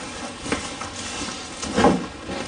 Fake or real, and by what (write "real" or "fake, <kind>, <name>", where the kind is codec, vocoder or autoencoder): real